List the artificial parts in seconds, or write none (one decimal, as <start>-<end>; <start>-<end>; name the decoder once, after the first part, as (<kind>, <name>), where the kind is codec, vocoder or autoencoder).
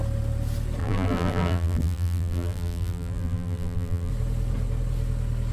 0.8-4.1 (vocoder, BigVGAN v2)